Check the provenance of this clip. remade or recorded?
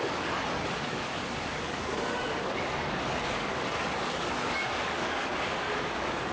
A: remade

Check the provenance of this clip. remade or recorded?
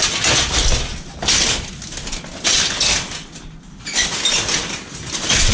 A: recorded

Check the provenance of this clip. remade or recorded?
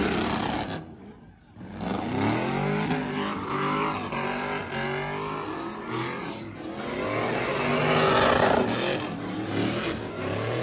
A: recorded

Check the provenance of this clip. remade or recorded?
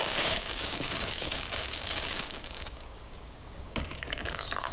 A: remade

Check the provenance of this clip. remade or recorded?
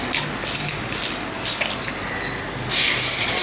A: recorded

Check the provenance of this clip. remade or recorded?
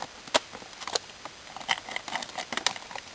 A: recorded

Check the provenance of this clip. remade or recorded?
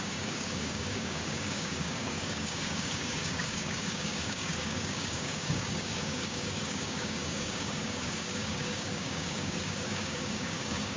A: remade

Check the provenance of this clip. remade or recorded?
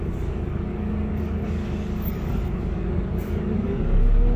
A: remade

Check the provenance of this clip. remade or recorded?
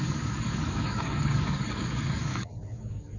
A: remade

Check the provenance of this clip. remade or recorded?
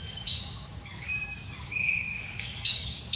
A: remade